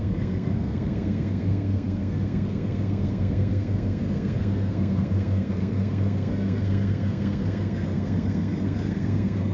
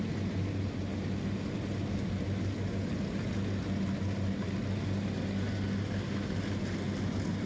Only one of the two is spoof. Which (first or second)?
first